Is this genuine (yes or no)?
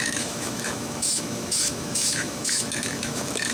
no